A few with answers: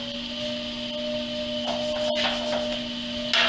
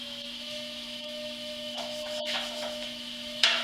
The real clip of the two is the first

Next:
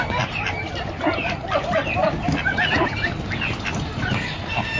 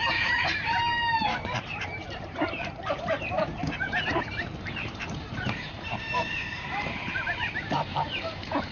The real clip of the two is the first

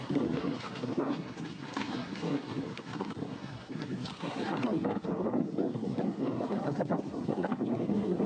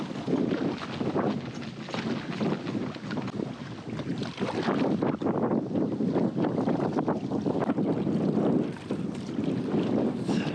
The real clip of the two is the second